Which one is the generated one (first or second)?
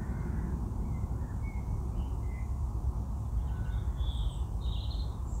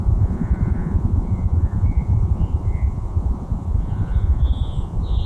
second